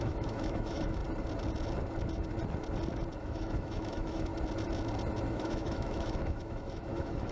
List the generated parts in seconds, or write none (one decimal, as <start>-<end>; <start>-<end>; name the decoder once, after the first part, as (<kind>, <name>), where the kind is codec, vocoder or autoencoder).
0.0-1.0 (autoencoder, DAC-VAE); 3.2-4.3; 5.3-7.3